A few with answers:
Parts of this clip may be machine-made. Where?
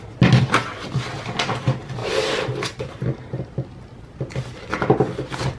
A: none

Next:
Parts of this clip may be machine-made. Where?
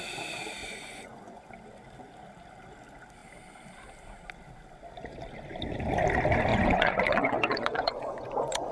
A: 0.6-1.5 (vocoder, Vocos); 6.5-8.7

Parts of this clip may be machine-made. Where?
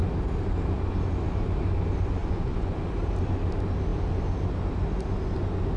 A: 2.2-2.8 (vocoder, Vocos)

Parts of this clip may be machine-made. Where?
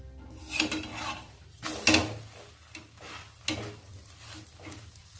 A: none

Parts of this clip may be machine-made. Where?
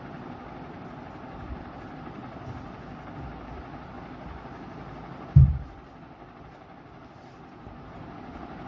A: none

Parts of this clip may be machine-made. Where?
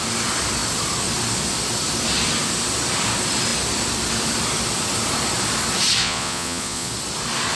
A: 6.0-6.9 (vocoder, Vocos)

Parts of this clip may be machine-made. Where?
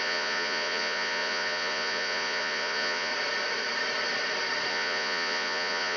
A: 0.0-3.1 (vocoder, Vocos); 4.7-6.0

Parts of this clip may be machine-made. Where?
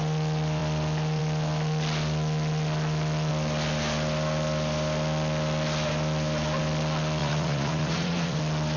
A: 7.2-8.4 (vocoder, Vocos)